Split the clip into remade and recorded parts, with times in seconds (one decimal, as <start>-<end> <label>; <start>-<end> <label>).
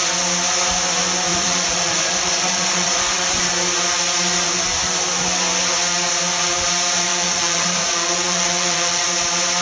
0.0-1.3 recorded; 1.3-3.4 remade; 3.4-7.1 recorded; 7.1-9.1 remade; 9.1-9.6 recorded